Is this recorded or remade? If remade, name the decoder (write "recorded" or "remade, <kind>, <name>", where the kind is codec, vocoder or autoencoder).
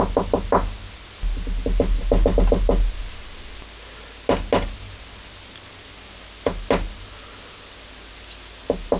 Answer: recorded